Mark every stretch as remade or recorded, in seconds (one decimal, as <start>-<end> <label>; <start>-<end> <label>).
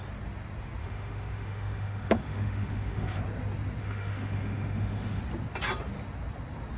0.0-0.8 recorded; 0.8-3.2 remade; 3.2-3.8 recorded; 3.8-5.2 remade; 5.2-6.8 recorded